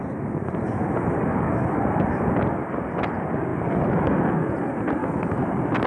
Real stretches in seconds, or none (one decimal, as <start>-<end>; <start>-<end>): 0.0-5.0; 5.5-5.9